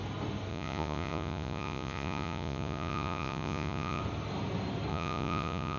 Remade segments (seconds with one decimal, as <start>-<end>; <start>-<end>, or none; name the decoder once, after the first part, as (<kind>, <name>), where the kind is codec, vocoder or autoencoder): 0.5-4.0 (vocoder, Vocos); 4.9-5.8